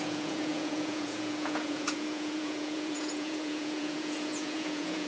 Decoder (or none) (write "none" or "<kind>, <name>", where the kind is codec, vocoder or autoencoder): vocoder, Vocos